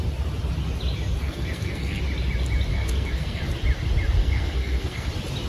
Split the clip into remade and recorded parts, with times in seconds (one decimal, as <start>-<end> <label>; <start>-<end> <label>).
0.0-1.2 recorded; 1.2-2.0 remade; 2.0-2.7 recorded; 2.7-3.4 remade; 3.4-4.2 recorded; 4.2-5.1 remade; 5.1-5.5 recorded